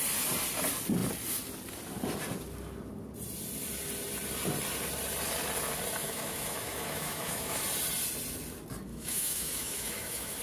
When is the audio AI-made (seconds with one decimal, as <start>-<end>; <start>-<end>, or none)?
6.0-7.6; 8.9-10.4